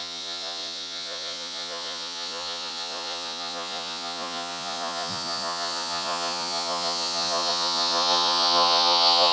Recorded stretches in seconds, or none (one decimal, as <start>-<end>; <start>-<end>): none